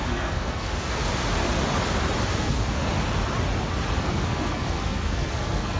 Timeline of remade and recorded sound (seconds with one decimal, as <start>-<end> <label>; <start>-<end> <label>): 0.0-0.9 remade; 0.9-2.4 recorded; 2.4-2.9 remade; 2.9-4.0 recorded; 4.0-5.8 remade